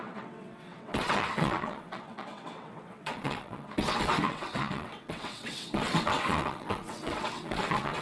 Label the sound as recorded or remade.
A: remade